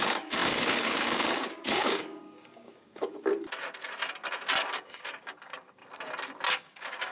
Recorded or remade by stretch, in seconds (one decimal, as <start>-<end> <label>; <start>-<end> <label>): 0.0-3.3 remade; 3.3-4.6 recorded; 4.6-5.8 remade; 5.8-6.5 recorded; 6.5-7.1 remade